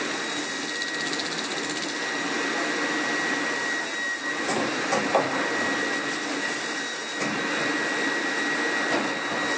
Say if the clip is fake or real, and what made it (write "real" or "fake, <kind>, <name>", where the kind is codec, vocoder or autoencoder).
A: real